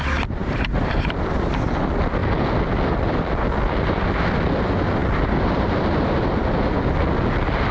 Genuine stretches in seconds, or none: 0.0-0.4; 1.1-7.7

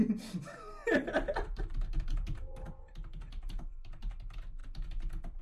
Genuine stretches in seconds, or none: 0.0-0.8; 4.0-5.4